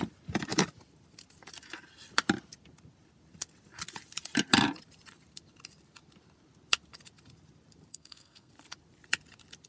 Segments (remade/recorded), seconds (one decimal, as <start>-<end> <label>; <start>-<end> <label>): 0.0-7.9 recorded; 7.9-8.5 remade; 8.5-9.7 recorded